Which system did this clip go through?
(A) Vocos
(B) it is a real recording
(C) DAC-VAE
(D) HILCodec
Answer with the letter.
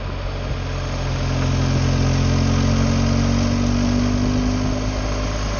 B